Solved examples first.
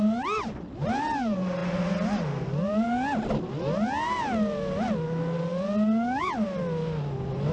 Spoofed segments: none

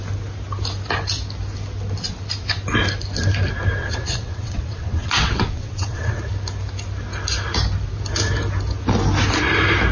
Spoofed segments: 3.8-6.3 (vocoder, WaveNeXt)

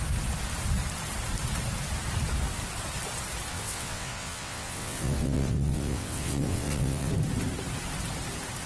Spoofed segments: 3.5-7.1 (vocoder, WaveNeXt)